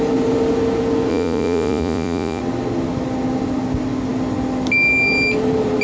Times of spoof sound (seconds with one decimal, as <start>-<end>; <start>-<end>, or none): 1.1-2.4

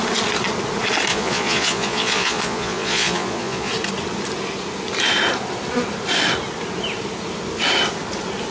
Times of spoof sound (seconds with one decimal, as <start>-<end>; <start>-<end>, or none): 1.1-3.7

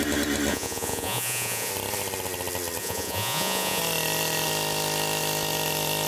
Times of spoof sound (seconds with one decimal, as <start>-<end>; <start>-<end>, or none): 0.5-1.7; 2.8-3.8

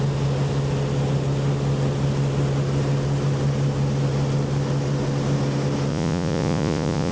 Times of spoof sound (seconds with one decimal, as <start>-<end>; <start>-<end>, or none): 5.9-7.1

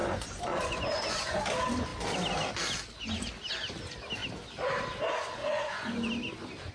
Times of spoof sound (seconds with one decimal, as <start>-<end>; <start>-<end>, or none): 0.0-1.4; 5.4-6.1

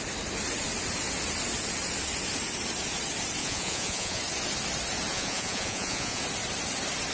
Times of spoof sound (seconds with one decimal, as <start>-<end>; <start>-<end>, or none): 3.4-4.2; 5.1-6.2

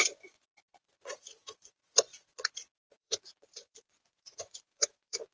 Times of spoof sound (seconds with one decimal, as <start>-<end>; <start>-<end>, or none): 0.0-5.3

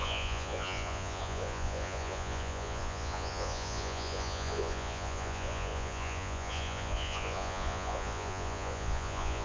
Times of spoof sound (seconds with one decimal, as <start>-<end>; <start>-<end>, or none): 0.0-9.4